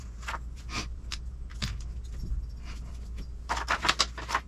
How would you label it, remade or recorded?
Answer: recorded